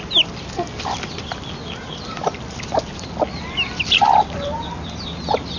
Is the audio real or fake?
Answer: real